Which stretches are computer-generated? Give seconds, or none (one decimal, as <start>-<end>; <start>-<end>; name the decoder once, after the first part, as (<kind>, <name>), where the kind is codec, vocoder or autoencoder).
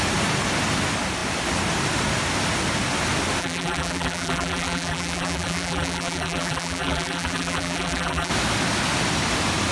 3.4-8.3 (vocoder, BigVGAN v2)